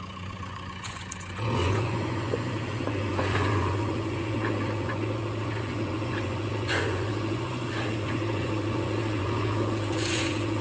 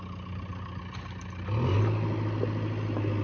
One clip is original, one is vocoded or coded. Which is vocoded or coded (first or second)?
first